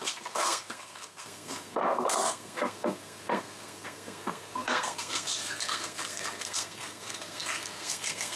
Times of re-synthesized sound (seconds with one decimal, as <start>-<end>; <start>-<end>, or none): 0.0-8.4

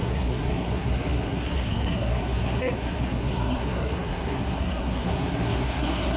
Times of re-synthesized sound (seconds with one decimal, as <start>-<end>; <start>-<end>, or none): 0.0-6.2

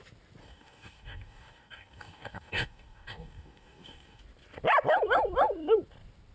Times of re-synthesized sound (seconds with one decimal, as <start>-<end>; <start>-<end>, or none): 0.4-4.2